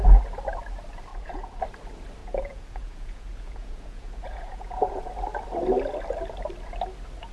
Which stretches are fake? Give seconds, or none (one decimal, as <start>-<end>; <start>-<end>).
1.1-1.6; 2.2-5.1